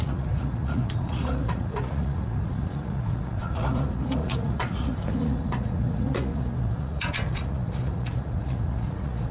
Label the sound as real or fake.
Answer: fake